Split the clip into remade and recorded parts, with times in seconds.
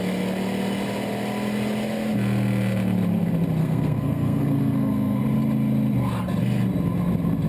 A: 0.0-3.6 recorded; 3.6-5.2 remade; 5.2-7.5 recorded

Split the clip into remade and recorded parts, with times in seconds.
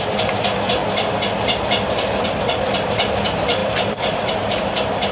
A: 0.0-3.6 recorded; 3.6-4.3 remade; 4.3-5.1 recorded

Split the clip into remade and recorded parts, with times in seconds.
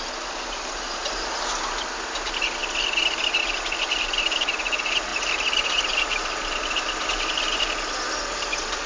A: 0.0-8.9 recorded